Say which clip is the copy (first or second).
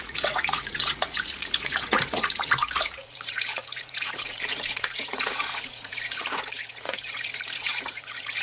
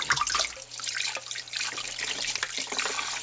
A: first